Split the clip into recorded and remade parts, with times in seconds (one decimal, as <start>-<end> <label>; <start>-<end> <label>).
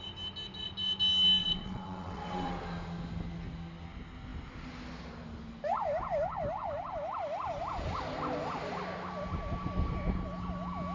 0.0-1.4 recorded; 1.4-2.5 remade; 2.5-10.9 recorded